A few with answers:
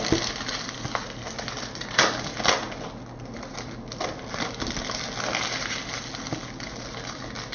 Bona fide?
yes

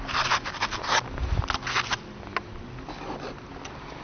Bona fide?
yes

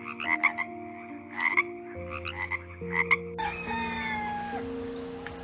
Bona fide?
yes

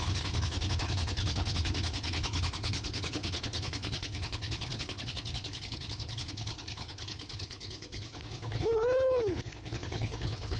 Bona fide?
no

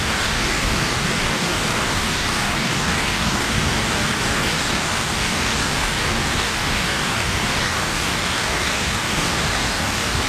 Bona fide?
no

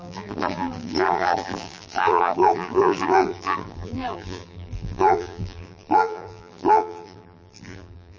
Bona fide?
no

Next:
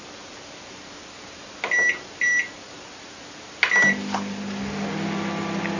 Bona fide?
yes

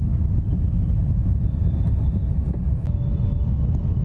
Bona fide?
yes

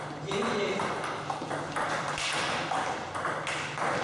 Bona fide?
no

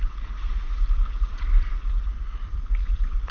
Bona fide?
no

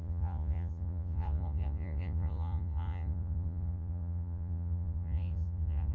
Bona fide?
no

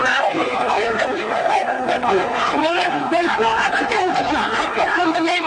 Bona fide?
no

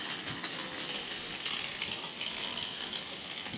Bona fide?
yes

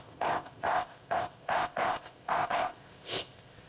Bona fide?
no